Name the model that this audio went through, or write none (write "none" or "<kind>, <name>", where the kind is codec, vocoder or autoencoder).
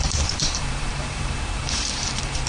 vocoder, BigVGAN v2